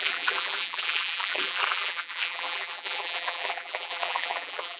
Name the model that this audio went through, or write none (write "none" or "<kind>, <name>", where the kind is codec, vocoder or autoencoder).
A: vocoder, BigVGAN v2